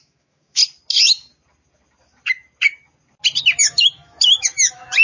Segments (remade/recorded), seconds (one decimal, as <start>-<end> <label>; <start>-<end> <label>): 0.0-0.6 remade; 0.6-3.6 recorded; 3.6-5.0 remade